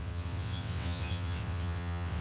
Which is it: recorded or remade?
remade